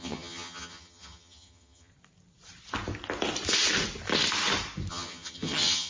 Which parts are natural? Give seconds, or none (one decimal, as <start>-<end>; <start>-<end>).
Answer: 1.9-4.9